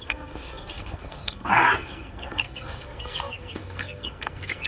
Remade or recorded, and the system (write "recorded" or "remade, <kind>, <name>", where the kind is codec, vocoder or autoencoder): remade, codec, SNAC